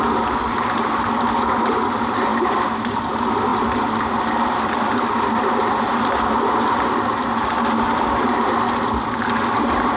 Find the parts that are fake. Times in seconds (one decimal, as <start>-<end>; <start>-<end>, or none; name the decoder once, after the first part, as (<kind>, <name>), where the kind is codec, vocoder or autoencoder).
none